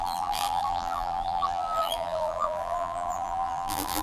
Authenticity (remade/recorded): remade